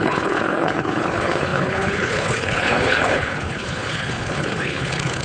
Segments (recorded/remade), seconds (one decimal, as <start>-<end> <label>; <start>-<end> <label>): 0.0-5.2 remade